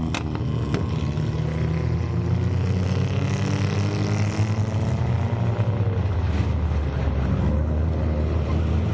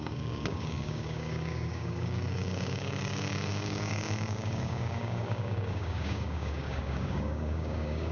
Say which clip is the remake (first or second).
second